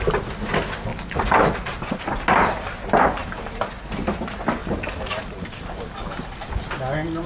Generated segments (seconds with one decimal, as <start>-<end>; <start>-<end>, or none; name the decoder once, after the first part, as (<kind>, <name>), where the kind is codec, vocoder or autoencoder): 0.9-2.0 (vocoder, BigVGAN v2); 3.2-3.8; 4.6-6.6